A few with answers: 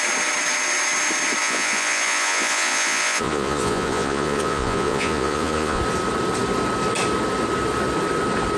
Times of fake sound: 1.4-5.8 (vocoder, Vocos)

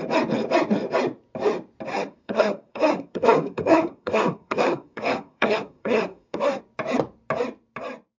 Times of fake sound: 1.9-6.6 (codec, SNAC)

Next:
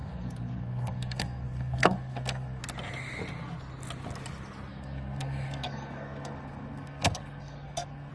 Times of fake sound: 0.0-2.6 (codec, SNAC); 4.7-8.1

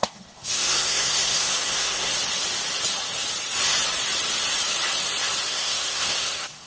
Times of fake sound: 0.0-2.1 (codec, SNAC); 5.5-6.7